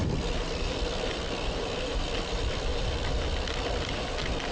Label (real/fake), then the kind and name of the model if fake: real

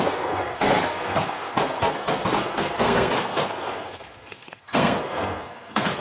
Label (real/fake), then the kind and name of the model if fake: fake, codec, SNAC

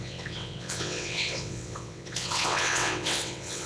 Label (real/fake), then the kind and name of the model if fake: fake, vocoder, WaveNeXt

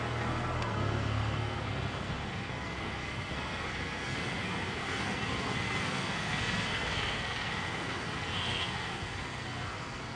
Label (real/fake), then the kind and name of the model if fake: fake, codec, SNAC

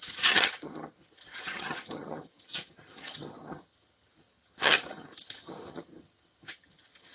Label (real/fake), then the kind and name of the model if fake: fake, vocoder, HiFi-GAN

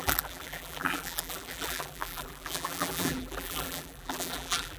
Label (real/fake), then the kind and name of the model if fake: fake, vocoder, BigVGAN v2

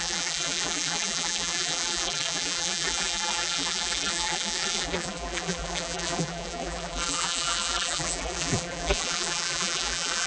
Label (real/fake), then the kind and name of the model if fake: fake, vocoder, BigVGAN v2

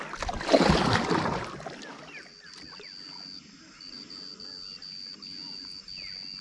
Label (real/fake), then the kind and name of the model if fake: real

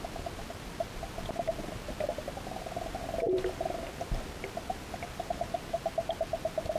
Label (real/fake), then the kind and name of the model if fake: real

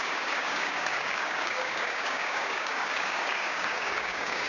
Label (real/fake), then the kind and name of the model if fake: fake, codec, DAC